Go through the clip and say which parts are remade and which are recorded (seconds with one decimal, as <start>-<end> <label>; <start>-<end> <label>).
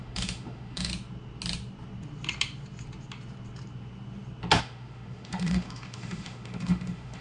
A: 0.0-0.9 remade; 0.9-4.6 recorded; 4.6-7.2 remade